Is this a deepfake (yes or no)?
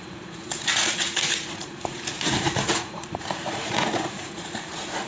yes